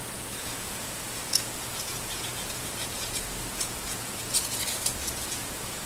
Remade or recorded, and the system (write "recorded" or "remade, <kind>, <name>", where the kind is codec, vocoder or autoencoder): remade, vocoder, Vocos